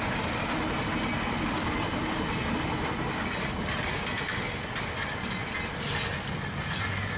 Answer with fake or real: real